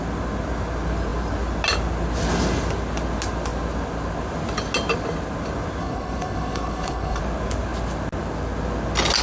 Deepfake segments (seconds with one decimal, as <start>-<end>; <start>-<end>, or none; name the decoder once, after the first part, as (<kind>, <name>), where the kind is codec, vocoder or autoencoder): 5.8-7.2 (codec, HILCodec)